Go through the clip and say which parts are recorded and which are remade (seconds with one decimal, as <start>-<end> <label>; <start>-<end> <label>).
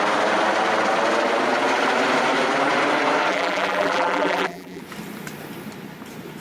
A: 0.0-3.3 recorded; 3.3-4.8 remade; 4.8-6.4 recorded